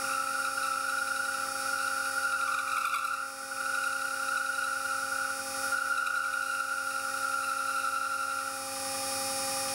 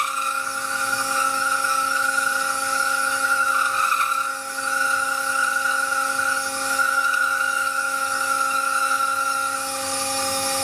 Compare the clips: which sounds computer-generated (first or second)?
second